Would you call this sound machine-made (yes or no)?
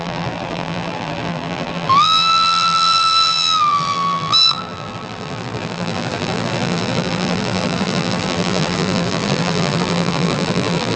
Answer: yes